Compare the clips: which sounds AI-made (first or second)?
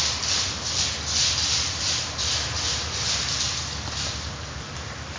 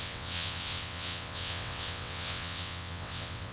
second